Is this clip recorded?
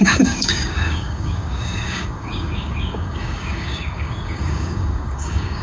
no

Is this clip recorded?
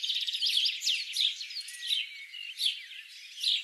yes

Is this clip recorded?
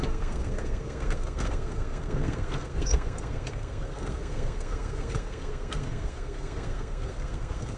no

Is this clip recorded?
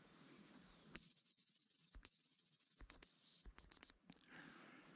no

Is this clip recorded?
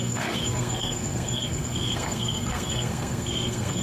no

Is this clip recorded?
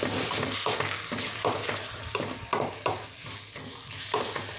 yes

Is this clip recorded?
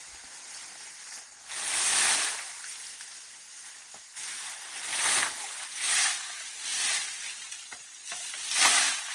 yes